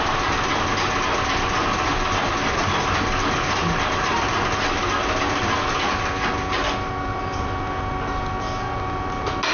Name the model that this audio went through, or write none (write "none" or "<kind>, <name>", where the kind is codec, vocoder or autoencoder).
none